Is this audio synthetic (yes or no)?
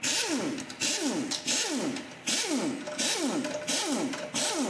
no